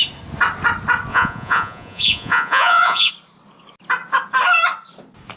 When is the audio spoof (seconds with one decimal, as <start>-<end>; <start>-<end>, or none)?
1.1-3.1